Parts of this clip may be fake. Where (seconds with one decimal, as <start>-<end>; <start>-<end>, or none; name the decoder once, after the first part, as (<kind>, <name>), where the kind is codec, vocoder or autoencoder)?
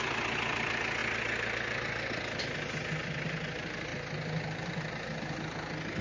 none